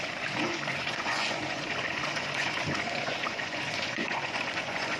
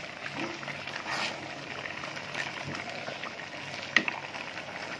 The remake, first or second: first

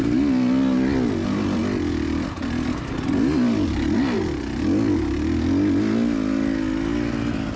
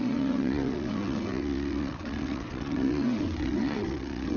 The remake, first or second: second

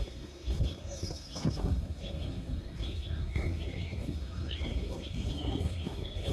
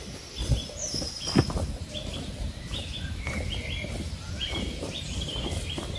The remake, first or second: first